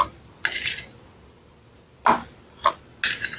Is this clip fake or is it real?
real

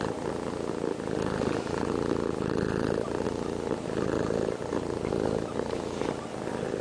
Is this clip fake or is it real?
real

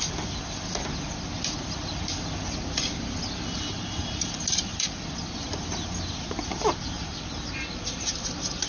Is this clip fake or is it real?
real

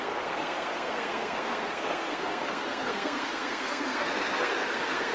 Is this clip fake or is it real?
fake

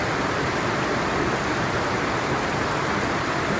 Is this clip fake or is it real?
real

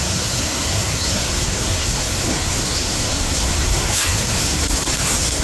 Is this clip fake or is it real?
fake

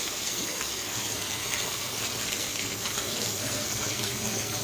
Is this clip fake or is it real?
fake